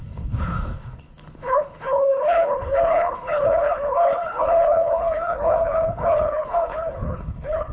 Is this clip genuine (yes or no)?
no